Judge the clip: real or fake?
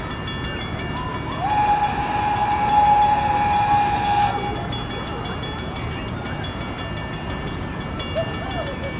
real